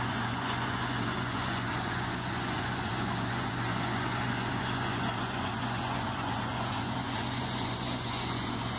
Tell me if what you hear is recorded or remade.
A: remade